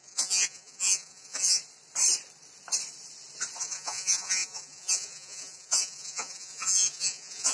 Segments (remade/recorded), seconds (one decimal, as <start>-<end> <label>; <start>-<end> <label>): 0.0-1.6 remade; 1.6-3.6 recorded; 3.6-7.5 remade

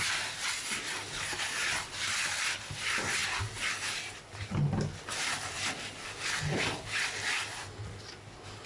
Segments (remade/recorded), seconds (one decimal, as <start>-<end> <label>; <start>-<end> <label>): 0.0-8.7 recorded

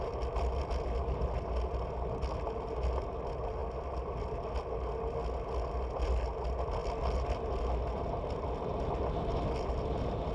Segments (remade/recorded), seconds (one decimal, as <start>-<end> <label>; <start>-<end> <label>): 0.0-10.3 recorded

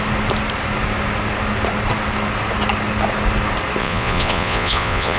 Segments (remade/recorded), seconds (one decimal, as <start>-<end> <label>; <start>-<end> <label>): 0.0-3.8 recorded; 3.8-5.2 remade